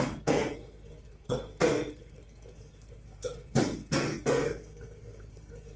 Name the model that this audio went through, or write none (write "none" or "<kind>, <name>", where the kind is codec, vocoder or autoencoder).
codec, SNAC